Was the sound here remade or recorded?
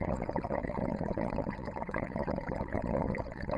remade